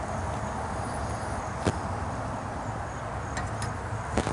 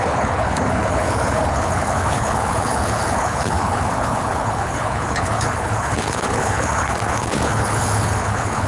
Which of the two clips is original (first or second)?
first